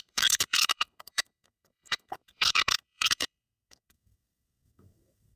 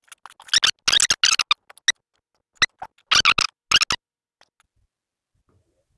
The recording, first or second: second